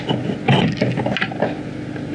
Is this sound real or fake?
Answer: real